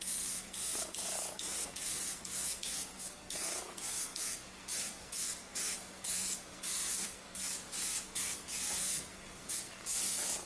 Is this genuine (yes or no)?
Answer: no